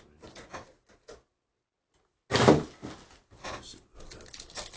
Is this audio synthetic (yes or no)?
no